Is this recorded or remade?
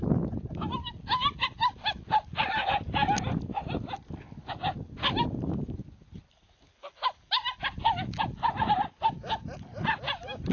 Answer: recorded